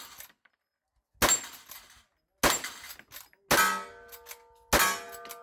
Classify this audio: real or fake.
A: real